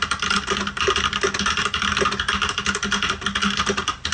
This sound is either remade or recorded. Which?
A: recorded